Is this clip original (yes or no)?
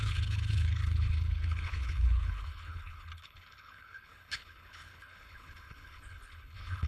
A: no